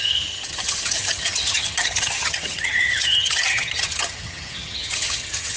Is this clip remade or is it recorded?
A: remade